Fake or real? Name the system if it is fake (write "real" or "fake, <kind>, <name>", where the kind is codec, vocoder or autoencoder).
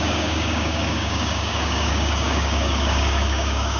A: fake, codec, DAC